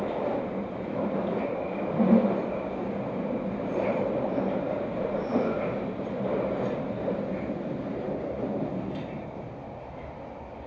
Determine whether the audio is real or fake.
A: real